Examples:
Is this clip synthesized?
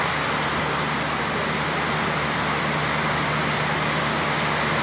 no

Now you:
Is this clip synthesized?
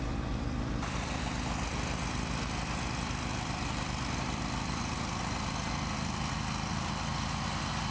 no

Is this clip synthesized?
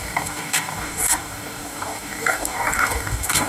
yes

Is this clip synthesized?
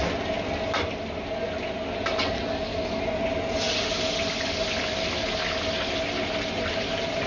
no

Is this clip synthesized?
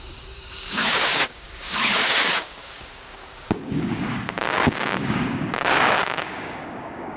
yes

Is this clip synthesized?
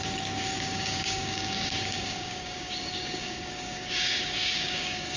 yes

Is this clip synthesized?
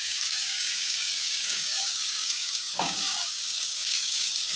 yes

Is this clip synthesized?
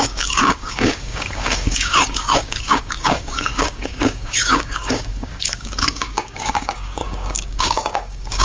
yes